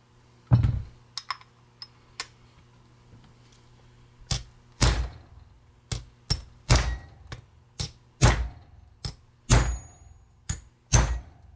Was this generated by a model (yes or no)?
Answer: no